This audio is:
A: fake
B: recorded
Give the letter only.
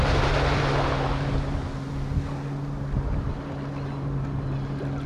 B